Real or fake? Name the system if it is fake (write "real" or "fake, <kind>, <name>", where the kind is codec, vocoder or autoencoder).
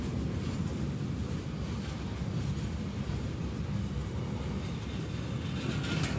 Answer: real